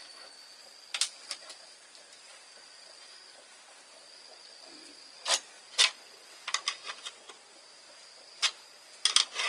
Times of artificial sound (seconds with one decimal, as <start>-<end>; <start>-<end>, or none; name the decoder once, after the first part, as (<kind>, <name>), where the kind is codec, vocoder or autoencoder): none